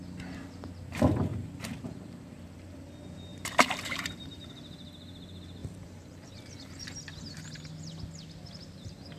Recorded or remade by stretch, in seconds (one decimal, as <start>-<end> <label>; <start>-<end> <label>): 0.0-1.3 recorded; 1.3-2.4 remade; 2.4-3.3 recorded; 3.3-4.5 remade; 4.5-5.6 recorded; 5.6-6.9 remade; 6.9-9.2 recorded